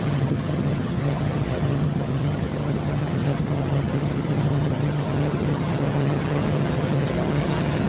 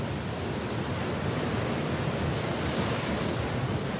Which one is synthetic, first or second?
first